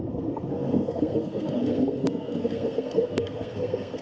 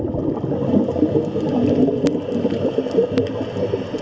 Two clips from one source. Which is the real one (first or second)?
second